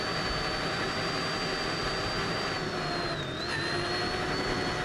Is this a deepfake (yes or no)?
no